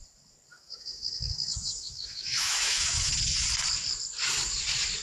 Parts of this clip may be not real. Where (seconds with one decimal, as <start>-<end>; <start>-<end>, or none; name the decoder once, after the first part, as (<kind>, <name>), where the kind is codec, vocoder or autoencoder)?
0.5-3.1 (autoencoder, DAC-VAE)